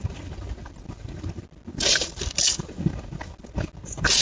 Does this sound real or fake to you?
real